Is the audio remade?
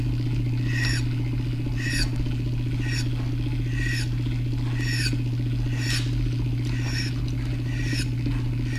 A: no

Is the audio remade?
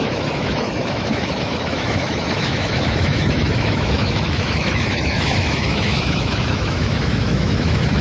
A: yes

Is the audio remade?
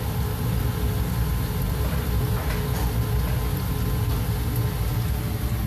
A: no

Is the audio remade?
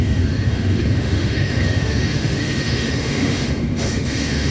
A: yes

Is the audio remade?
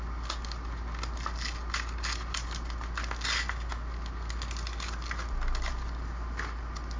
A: no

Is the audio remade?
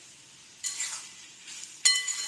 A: no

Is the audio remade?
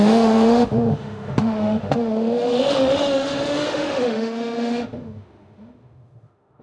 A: yes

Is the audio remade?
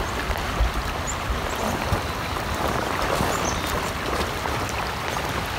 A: no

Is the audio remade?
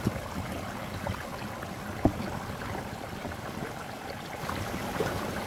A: no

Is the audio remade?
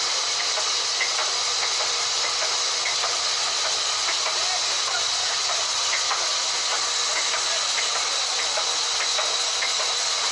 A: no